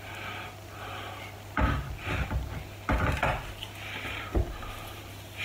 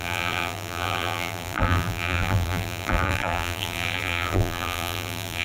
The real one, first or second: first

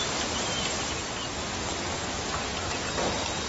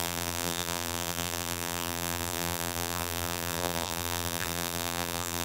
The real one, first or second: first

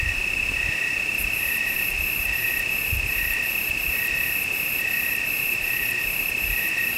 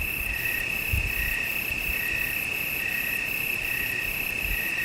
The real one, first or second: second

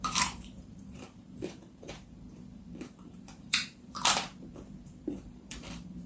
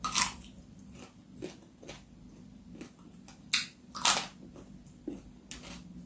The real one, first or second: second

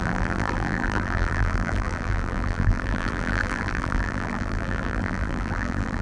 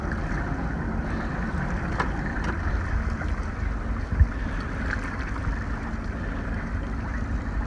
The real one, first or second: second